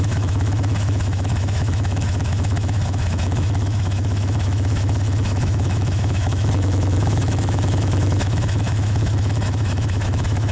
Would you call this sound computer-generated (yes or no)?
yes